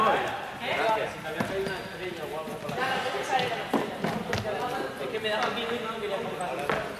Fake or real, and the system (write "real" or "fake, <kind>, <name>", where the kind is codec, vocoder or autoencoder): real